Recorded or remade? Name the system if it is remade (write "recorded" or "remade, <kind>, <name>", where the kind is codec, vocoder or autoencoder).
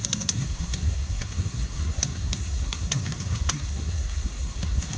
remade, codec, SNAC